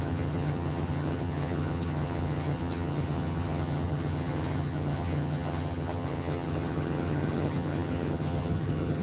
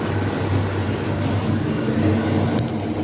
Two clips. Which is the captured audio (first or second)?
second